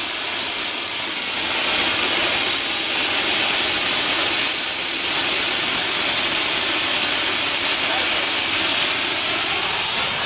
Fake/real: real